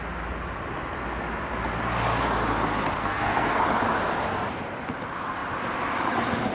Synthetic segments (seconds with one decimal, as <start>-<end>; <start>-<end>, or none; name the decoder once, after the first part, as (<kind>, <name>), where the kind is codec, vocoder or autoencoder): 3.0-3.6 (codec, SNAC)

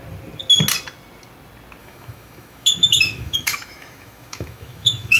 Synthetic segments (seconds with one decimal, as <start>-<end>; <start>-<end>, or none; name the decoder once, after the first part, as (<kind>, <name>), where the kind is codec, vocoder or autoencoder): 1.8-5.2 (autoencoder, DAC-VAE)

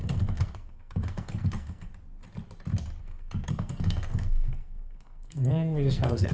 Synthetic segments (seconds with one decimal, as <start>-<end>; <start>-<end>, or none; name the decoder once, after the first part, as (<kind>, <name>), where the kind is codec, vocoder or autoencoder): 0.0-1.9 (codec, SNAC); 3.0-6.3

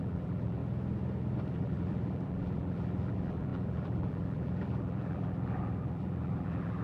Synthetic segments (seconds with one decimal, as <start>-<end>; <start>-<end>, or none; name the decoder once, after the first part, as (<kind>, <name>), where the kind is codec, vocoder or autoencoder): 0.0-0.6 (vocoder, BigVGAN v2); 1.5-6.8

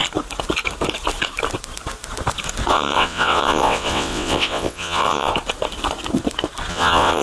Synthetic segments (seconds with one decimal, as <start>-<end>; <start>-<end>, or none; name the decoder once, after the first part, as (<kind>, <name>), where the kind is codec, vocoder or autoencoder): 2.7-5.3 (vocoder, WaveNeXt); 6.7-7.2